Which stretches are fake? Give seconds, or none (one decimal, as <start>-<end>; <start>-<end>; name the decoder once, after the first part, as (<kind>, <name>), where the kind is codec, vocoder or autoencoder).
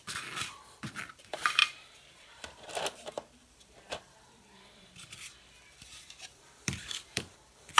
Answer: 0.0-7.8 (vocoder, BigVGAN v2)